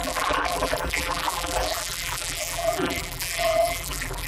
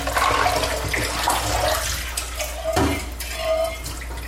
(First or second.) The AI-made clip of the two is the first